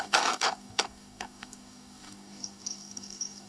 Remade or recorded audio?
remade